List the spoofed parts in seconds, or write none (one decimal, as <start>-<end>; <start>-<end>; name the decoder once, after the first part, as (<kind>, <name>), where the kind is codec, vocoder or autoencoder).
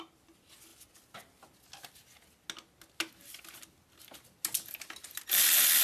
none